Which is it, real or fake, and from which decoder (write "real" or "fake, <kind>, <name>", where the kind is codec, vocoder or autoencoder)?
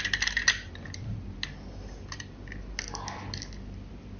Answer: real